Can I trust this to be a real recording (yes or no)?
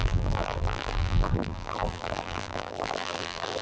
no